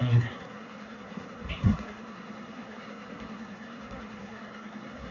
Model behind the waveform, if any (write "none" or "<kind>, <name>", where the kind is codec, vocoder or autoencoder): codec, SNAC